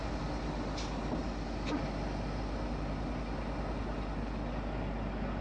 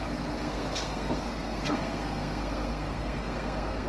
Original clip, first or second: first